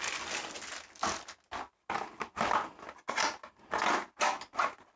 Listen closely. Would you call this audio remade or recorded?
recorded